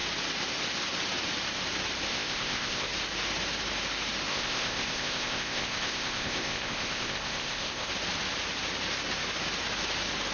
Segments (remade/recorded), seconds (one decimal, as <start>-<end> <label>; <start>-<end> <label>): 0.0-2.1 recorded; 2.1-2.9 remade; 2.9-4.3 recorded; 4.3-7.9 remade; 7.9-10.3 recorded